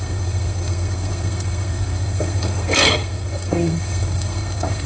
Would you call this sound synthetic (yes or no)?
yes